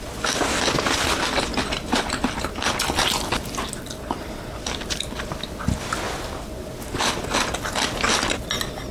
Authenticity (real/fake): fake